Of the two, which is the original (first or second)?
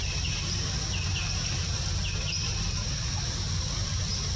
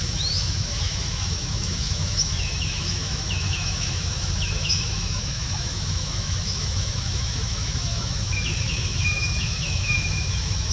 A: first